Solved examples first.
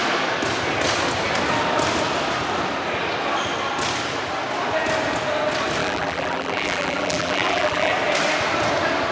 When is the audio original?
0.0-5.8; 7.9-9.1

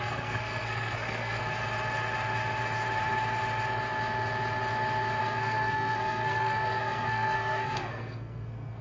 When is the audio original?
1.4-5.2

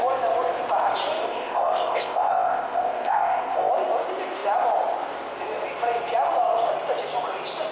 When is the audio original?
0.0-1.2; 3.7-7.7

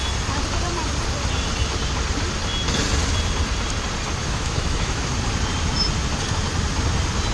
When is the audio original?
0.0-4.2; 5.1-7.3

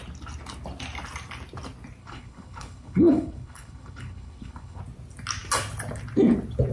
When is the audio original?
0.0-2.0; 4.8-6.7

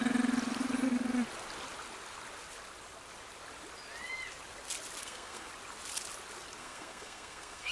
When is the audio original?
0.0-5.0; 5.5-6.6

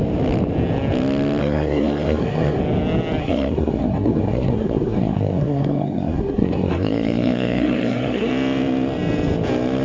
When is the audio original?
0.0-1.4; 2.6-3.2; 8.3-9.8

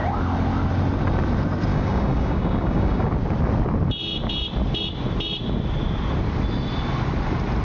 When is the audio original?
0.0-1.7; 3.1-7.6